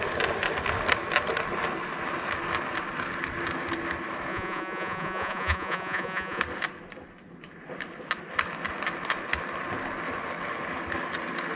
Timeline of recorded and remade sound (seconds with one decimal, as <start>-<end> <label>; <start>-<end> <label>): 0.0-4.3 recorded; 4.3-6.4 remade; 6.4-11.6 recorded